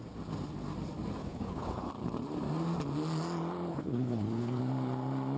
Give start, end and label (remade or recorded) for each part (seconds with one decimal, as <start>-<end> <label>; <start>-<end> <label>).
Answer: 0.0-1.2 recorded; 1.2-1.9 remade; 1.9-3.7 recorded; 3.7-4.6 remade; 4.6-5.4 recorded